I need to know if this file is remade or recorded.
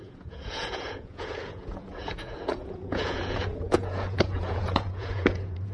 remade